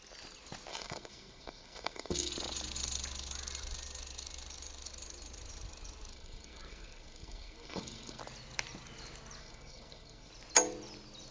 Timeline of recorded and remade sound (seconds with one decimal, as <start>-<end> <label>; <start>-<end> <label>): 0.0-0.7 recorded; 0.7-2.3 remade; 2.3-6.1 recorded; 6.1-8.2 remade; 8.2-9.4 recorded; 9.4-10.3 remade; 10.3-11.3 recorded